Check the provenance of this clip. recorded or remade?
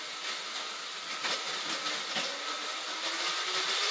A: recorded